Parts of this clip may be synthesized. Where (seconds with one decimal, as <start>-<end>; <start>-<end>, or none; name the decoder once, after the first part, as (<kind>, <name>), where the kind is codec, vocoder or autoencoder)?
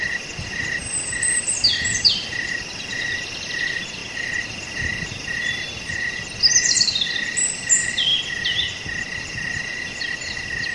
none